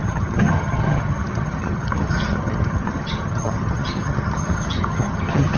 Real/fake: fake